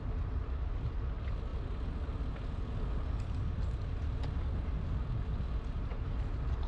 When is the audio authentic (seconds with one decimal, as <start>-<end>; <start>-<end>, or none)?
0.0-6.7